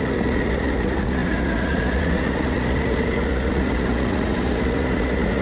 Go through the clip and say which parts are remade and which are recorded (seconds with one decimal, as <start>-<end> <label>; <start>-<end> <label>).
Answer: 0.0-5.4 remade